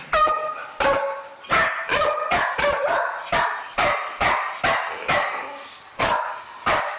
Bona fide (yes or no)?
yes